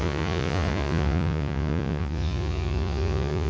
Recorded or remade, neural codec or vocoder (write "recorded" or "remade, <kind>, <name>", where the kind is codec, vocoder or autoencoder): remade, vocoder, Vocos